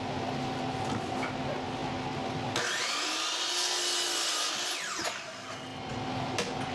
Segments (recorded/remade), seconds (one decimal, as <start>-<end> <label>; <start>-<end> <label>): 0.0-6.7 recorded